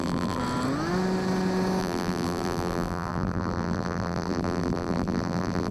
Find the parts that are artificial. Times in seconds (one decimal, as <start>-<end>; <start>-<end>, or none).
0.0-0.4; 1.8-5.7